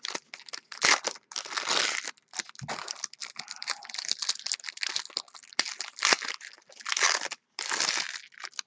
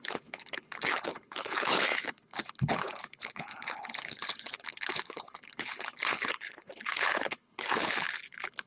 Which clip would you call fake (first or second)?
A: second